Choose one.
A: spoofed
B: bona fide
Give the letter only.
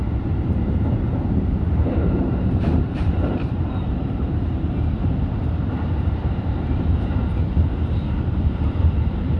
A